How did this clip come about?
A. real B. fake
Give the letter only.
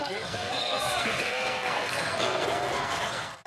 B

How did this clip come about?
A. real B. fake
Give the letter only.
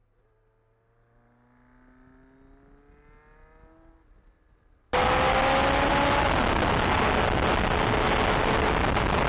A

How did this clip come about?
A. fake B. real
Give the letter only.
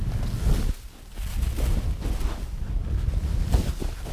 B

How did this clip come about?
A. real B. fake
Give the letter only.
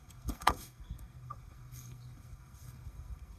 B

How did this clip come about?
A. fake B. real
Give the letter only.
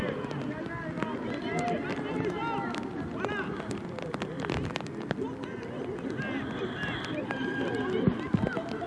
B